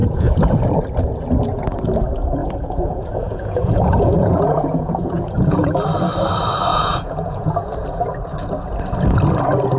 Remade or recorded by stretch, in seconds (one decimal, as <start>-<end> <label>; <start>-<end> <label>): 0.0-0.5 remade; 0.5-2.4 recorded; 2.4-5.7 remade; 5.7-6.7 recorded; 6.7-8.0 remade; 8.0-9.8 recorded